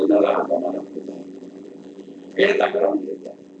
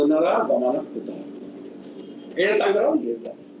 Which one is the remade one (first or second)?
first